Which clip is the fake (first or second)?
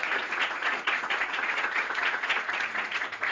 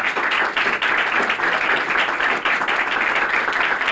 first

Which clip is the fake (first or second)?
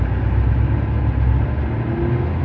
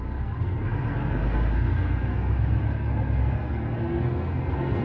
second